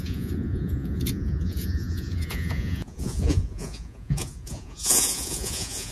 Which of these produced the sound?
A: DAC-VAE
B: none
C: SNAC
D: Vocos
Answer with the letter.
D